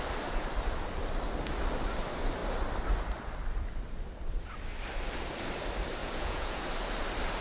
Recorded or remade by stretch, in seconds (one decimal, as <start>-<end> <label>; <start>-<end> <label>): 0.0-6.0 recorded; 6.0-6.6 remade; 6.6-7.4 recorded